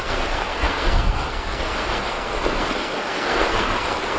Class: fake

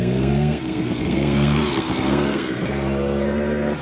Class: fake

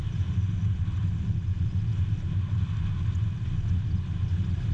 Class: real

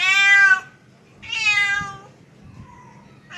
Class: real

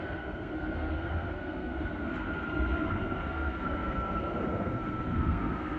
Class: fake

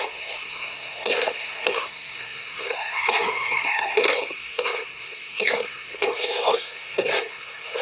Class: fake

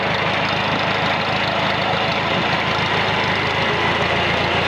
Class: real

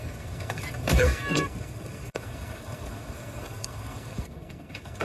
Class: fake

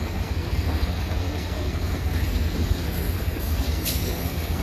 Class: fake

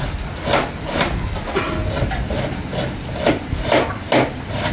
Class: real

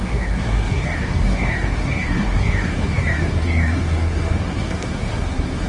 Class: fake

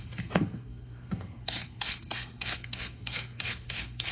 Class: fake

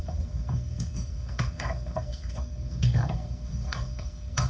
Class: fake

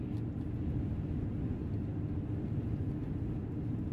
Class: real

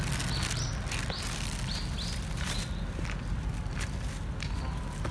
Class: real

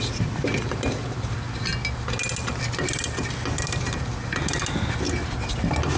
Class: real